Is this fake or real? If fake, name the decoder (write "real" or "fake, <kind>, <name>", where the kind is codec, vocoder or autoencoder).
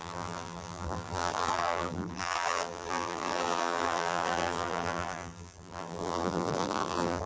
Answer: fake, vocoder, BigVGAN v2